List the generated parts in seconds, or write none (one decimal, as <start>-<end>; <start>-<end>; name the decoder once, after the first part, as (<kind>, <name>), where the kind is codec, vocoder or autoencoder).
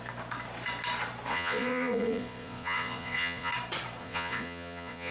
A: 1.3-3.5 (vocoder, Vocos); 4.0-5.1